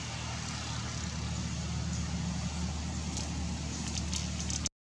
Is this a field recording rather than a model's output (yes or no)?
yes